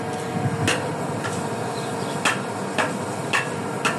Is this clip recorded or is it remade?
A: recorded